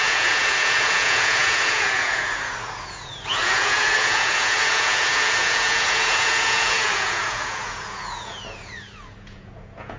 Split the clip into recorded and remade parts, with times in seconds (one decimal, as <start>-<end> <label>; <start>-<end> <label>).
0.0-10.0 remade